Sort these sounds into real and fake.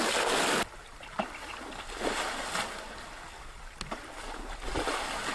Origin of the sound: real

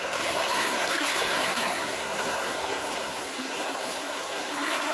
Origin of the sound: fake